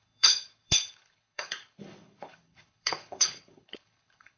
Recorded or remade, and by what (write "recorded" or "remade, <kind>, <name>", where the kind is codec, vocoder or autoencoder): remade, codec, HILCodec